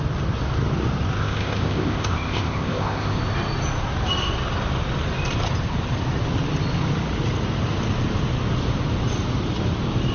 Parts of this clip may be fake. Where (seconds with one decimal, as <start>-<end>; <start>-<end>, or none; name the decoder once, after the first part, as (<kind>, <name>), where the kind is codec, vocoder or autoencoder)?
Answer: 1.2-3.2 (codec, ZipCodec)

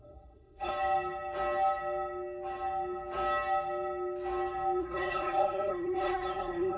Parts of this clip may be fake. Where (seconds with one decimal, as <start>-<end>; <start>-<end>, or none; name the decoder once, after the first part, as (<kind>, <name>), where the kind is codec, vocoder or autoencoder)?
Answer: 0.0-0.7 (codec, SNAC); 4.8-6.8

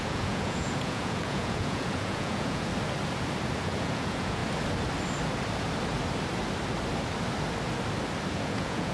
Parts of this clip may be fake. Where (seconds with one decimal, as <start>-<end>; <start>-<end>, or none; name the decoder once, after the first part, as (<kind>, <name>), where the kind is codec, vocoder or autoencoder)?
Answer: 0.0-2.7 (vocoder, Vocos); 3.6-4.4; 8.3-8.9

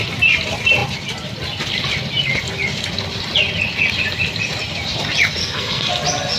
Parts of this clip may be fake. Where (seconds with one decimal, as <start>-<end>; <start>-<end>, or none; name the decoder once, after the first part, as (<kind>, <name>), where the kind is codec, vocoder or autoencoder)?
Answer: 5.4-5.9 (codec, SNAC)

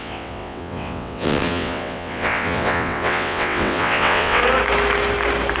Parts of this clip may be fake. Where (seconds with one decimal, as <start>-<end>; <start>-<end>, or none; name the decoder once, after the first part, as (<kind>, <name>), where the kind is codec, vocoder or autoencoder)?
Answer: 0.0-4.4 (vocoder, WaveNeXt)

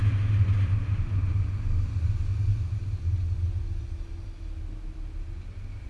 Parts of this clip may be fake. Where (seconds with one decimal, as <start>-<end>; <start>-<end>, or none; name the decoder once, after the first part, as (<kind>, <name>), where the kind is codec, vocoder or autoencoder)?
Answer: none

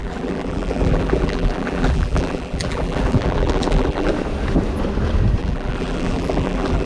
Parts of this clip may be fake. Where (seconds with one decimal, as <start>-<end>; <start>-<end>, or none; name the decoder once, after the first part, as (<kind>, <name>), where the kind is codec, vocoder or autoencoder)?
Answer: 0.0-4.1 (vocoder, BigVGAN v2); 5.4-6.9

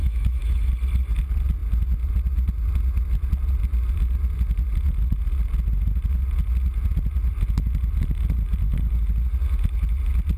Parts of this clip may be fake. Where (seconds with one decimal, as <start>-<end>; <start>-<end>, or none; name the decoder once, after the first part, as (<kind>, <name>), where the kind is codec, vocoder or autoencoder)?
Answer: 0.0-0.7 (autoencoder, DAC-VAE)